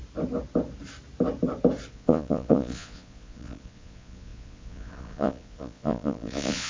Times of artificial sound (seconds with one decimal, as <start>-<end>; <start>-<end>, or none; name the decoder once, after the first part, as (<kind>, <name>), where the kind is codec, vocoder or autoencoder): 1.9-6.7 (vocoder, Vocos)